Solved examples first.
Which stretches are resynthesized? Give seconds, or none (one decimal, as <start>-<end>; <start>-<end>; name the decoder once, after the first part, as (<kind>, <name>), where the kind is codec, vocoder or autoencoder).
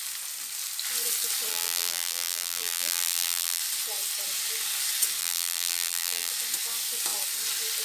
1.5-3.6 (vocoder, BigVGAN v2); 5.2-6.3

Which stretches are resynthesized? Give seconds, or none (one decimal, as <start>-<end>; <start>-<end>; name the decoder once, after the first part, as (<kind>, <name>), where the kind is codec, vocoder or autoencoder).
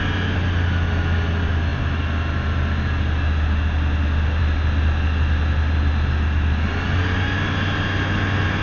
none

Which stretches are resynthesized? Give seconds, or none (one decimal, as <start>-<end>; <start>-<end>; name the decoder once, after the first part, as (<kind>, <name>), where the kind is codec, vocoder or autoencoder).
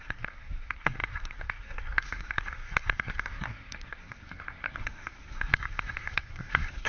0.0-6.9 (codec, SNAC)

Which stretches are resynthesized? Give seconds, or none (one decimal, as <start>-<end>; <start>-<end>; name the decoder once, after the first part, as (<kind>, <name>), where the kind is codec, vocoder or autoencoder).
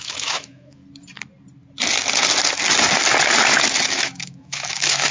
0.0-0.8 (autoencoder, DAC-VAE); 3.9-5.1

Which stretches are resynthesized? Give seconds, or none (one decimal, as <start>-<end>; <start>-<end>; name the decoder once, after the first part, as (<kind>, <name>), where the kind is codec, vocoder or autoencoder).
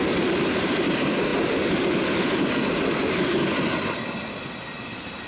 none